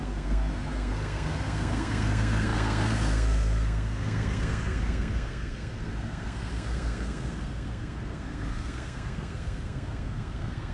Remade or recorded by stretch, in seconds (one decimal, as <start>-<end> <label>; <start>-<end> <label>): 0.0-10.7 remade